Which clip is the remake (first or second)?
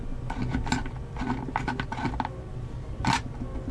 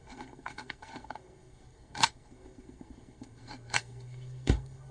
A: second